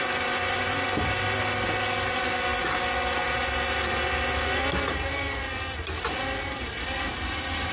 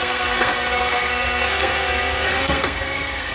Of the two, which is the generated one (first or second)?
second